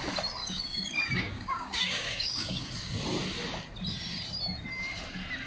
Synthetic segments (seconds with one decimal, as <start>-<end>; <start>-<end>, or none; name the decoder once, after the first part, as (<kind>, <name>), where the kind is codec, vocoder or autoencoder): 0.4-2.7 (codec, DAC)